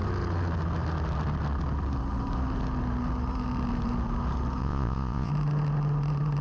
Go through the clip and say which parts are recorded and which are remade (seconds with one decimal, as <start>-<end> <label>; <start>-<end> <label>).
0.0-4.6 recorded; 4.6-5.3 remade; 5.3-6.4 recorded